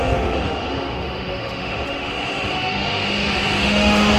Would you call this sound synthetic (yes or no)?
yes